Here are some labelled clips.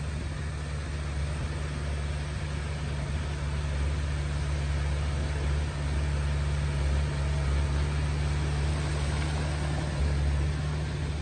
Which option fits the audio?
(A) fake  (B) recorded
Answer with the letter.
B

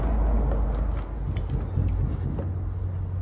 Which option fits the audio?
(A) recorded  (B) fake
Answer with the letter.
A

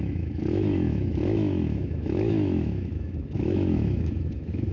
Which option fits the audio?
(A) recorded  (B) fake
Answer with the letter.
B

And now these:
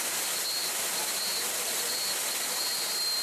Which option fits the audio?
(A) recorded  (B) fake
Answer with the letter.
A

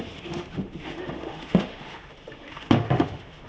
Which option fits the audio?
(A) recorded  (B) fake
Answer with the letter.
B